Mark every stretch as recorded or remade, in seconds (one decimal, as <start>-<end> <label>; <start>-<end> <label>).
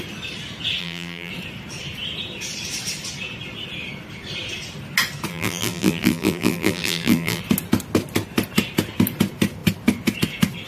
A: 0.0-0.8 recorded; 0.8-1.3 remade; 1.3-5.3 recorded; 5.3-7.4 remade; 7.4-10.7 recorded